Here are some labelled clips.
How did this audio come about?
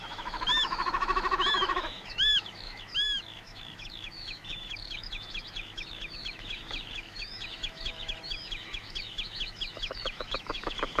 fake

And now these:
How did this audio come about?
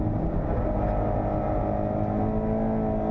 real